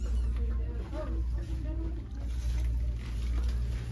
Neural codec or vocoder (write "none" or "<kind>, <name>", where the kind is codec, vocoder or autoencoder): none